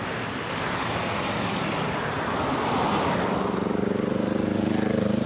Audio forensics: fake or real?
real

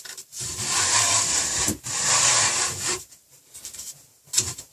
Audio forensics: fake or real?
fake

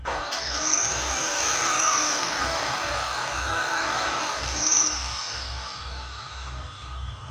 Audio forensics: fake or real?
fake